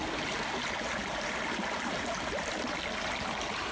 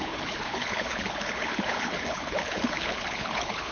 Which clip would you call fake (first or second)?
second